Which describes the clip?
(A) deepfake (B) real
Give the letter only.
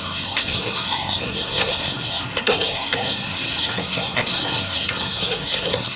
A